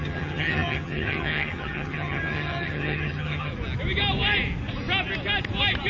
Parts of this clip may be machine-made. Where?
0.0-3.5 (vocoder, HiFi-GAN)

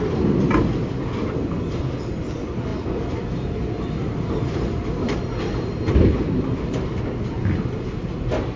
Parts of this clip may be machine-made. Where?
none

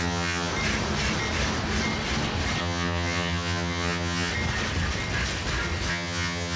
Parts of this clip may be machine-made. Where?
0.0-0.5 (vocoder, HiFi-GAN); 2.6-4.3; 5.9-6.6